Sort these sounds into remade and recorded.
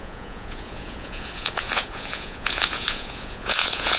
remade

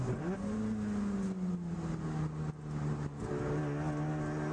recorded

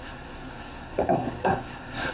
remade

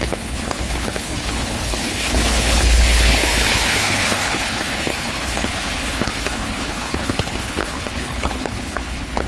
remade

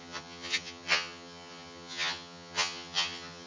remade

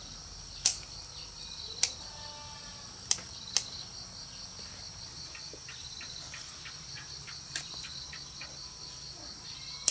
recorded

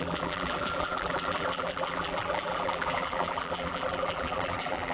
remade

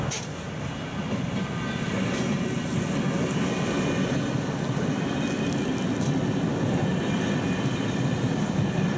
recorded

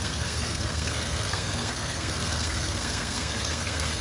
remade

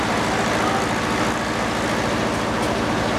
recorded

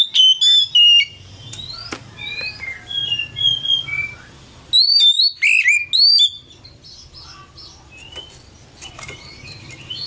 recorded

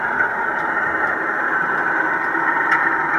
recorded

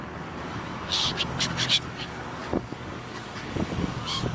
remade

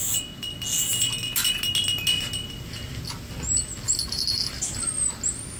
recorded